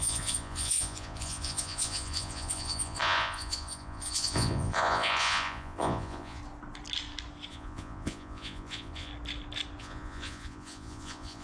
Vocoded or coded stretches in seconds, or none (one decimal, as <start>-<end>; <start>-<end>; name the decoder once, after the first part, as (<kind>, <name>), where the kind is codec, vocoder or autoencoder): 0.0-6.4 (vocoder, Vocos); 7.5-9.1; 9.8-11.4